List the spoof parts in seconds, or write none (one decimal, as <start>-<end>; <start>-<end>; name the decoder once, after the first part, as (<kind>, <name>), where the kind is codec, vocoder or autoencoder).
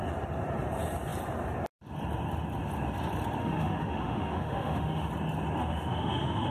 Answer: 3.4-5.1 (autoencoder, DAC-VAE); 5.6-6.5